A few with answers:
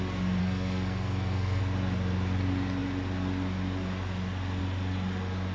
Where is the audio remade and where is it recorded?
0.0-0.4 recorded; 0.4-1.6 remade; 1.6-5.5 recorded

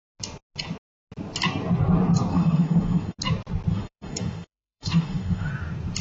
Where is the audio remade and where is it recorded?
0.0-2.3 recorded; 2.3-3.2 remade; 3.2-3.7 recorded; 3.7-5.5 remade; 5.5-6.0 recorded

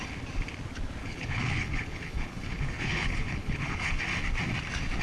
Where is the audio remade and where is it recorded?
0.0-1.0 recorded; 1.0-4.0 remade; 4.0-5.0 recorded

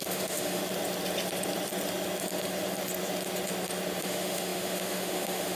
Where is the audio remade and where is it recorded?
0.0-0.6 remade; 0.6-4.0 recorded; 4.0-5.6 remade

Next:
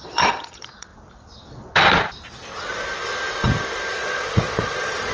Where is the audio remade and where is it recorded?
0.0-0.9 remade; 0.9-3.9 recorded; 3.9-5.1 remade

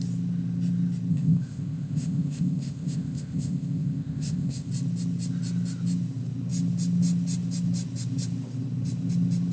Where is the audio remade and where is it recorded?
0.0-1.1 recorded; 1.1-4.7 remade; 4.7-9.5 recorded